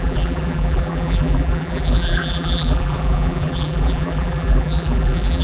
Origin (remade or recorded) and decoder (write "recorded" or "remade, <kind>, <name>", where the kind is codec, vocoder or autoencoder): remade, vocoder, BigVGAN v2